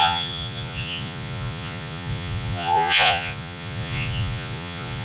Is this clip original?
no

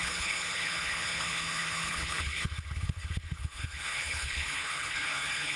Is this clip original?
no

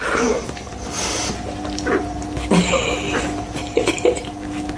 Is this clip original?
yes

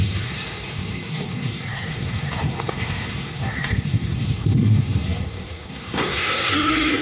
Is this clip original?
no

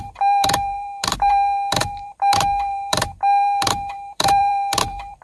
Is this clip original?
no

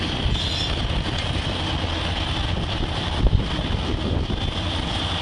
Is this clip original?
yes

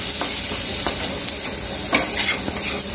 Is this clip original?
yes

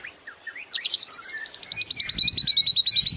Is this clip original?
yes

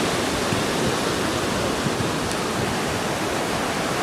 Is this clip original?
yes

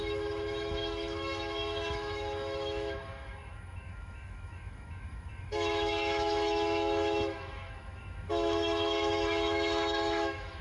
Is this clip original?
no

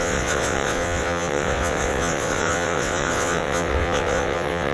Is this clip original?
no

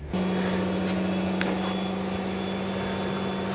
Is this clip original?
yes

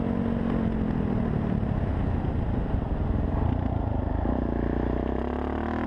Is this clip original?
yes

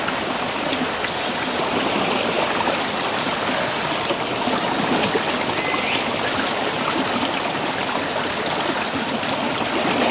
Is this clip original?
yes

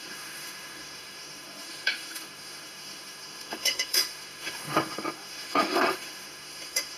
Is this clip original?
no